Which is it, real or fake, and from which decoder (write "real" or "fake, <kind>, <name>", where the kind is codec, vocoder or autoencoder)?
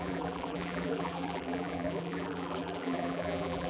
fake, vocoder, BigVGAN v2